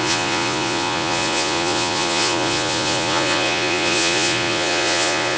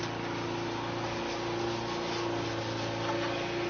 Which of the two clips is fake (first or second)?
first